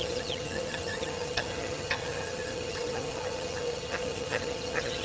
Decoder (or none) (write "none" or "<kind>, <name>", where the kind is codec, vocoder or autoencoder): vocoder, HiFi-GAN